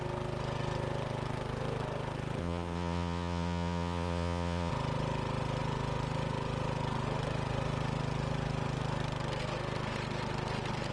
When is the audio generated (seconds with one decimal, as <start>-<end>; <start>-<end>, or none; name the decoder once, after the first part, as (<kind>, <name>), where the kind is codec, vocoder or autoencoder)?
2.4-4.7 (vocoder, Vocos)